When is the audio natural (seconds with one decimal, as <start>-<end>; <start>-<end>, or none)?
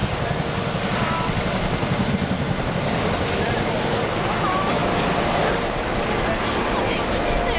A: 0.0-7.6